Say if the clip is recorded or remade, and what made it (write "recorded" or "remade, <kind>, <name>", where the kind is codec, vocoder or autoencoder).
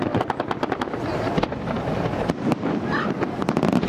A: recorded